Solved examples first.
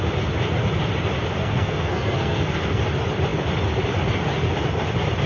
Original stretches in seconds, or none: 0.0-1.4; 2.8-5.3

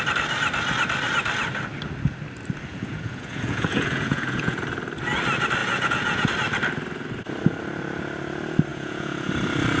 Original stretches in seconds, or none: 0.0-2.7; 4.6-5.6; 6.3-8.7; 9.3-9.8

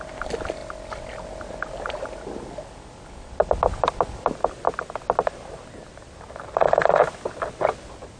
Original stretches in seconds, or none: 0.0-8.2